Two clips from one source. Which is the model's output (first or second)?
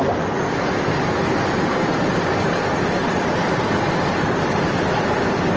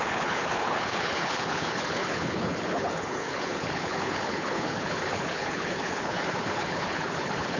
second